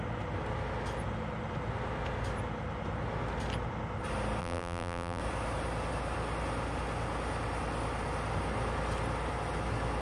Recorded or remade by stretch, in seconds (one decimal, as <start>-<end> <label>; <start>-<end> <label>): 0.0-4.4 recorded; 4.4-5.2 remade; 5.2-10.0 recorded